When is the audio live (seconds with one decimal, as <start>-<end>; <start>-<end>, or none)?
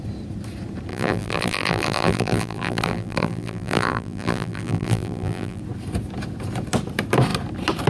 0.0-0.9; 5.6-7.9